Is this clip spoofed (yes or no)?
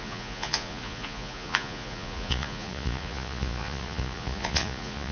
yes